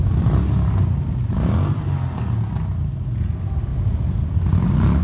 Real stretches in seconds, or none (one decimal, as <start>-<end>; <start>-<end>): 0.0-5.0